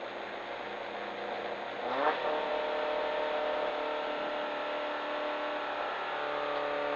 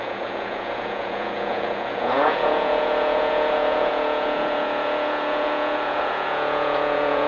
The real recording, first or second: first